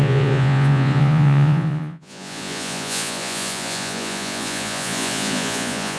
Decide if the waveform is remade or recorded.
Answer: remade